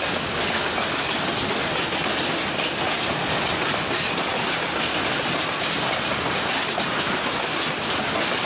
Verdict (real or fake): real